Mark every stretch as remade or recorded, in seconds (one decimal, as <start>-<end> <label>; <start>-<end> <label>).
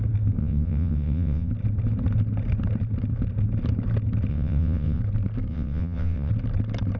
0.0-0.4 recorded; 0.4-1.5 remade; 1.5-4.3 recorded; 4.3-5.0 remade; 5.0-5.5 recorded; 5.5-6.3 remade; 6.3-7.0 recorded